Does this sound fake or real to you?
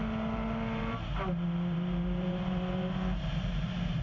fake